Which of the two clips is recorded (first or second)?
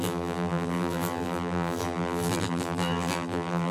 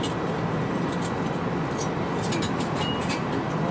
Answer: second